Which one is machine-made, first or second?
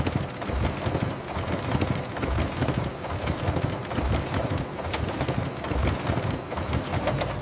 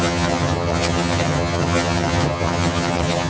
second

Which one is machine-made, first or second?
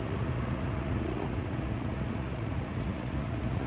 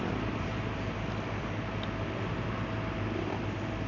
first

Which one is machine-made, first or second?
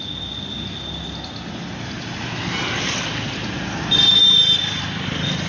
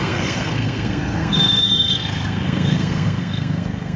second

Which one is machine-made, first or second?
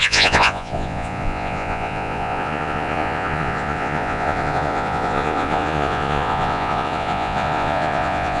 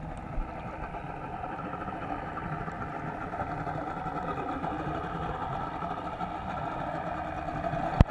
first